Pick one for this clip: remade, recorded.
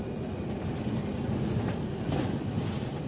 recorded